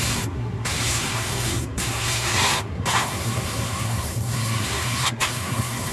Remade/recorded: remade